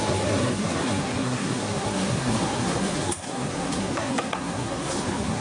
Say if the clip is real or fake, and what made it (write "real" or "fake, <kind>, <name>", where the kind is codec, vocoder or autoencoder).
fake, codec, SNAC